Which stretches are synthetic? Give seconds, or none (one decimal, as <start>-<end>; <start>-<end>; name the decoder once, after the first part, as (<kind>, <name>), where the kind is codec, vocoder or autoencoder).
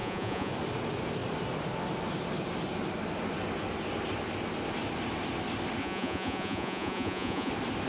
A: 0.0-0.5 (vocoder, Vocos); 5.8-7.5